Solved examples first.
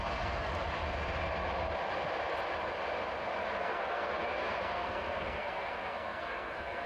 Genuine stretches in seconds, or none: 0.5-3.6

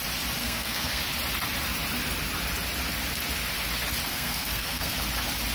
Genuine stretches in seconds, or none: 0.0-0.4; 1.0-4.1; 4.9-5.5